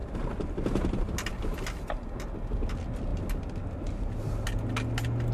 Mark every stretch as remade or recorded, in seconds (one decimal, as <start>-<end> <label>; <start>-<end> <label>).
0.0-5.3 recorded